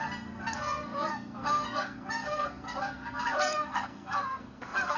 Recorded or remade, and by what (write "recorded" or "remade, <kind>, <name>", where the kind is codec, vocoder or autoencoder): remade, codec, SNAC